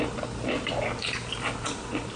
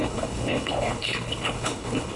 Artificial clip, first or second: second